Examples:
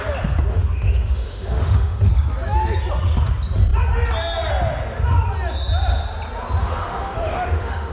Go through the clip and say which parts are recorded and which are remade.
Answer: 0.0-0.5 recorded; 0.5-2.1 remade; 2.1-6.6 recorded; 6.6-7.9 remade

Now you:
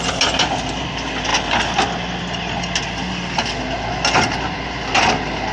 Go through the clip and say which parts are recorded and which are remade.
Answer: 0.0-5.5 recorded

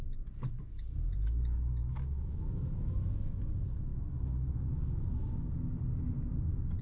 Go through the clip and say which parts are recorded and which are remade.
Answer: 0.0-1.8 recorded; 1.8-2.9 remade; 2.9-3.9 recorded; 3.9-5.5 remade; 5.5-6.8 recorded

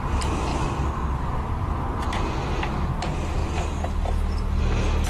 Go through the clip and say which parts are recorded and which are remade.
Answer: 0.0-5.1 recorded

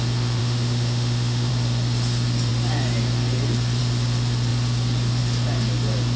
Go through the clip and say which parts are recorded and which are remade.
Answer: 0.0-0.4 recorded; 0.4-1.5 remade; 1.5-6.2 recorded